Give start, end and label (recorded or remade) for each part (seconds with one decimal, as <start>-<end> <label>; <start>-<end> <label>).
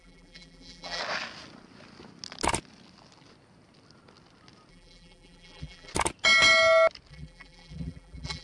0.0-1.0 remade; 1.0-4.7 recorded; 4.7-5.9 remade; 5.9-7.1 recorded; 7.1-8.4 remade